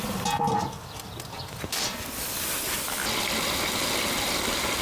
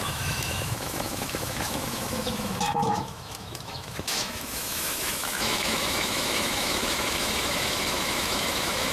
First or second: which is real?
first